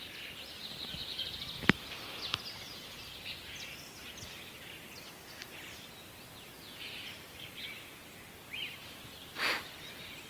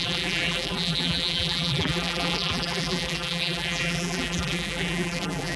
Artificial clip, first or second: second